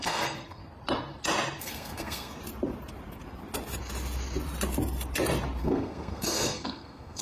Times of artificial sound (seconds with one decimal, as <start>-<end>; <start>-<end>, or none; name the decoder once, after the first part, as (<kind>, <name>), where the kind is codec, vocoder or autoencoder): 0.0-0.6 (codec, SNAC); 1.6-2.4; 5.6-7.2